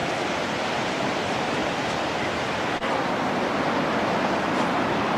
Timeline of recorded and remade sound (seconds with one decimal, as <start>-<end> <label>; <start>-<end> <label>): 0.0-0.6 recorded; 0.6-1.6 remade; 1.6-4.7 recorded; 4.7-5.2 remade